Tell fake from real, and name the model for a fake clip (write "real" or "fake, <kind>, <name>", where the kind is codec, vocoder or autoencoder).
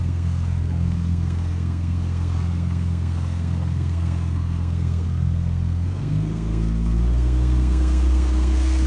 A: fake, codec, SNAC